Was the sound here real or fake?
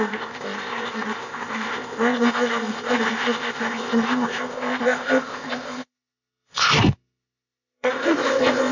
fake